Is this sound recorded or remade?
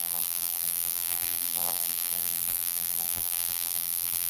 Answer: remade